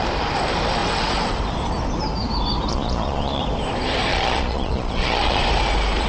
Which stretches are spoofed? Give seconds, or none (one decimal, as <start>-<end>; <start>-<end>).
2.7-3.4; 4.1-5.4